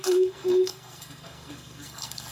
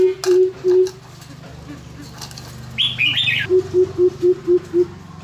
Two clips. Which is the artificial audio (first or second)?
first